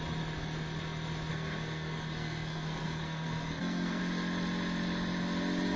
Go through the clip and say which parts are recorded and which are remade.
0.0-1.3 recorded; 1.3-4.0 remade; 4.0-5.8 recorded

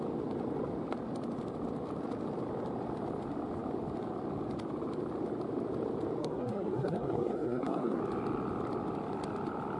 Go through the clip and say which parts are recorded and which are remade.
0.0-6.2 recorded; 6.2-8.0 remade; 8.0-9.8 recorded

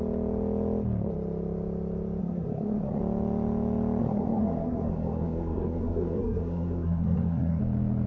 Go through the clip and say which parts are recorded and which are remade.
0.0-2.2 recorded; 2.2-3.0 remade; 3.0-4.0 recorded; 4.0-7.6 remade; 7.6-8.1 recorded

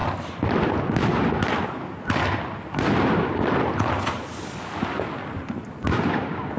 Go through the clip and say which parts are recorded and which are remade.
0.0-6.6 recorded

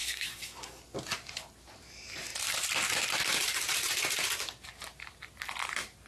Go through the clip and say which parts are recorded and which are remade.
0.0-0.8 remade; 0.8-6.1 recorded